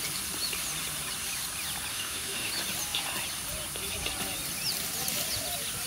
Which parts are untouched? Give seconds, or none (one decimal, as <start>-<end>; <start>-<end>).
0.0-1.9; 2.5-5.9